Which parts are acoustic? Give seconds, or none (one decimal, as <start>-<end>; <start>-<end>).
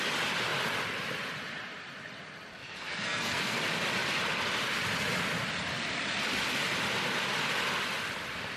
0.0-2.5; 3.6-8.6